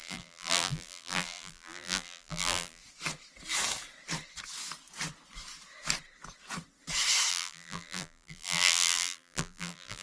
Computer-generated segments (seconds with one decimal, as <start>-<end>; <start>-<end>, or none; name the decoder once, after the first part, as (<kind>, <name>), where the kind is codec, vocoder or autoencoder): 0.0-2.8 (vocoder, BigVGAN v2); 7.3-10.0